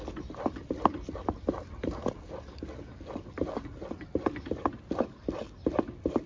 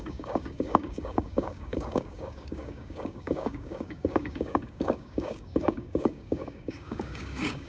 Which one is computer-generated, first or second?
second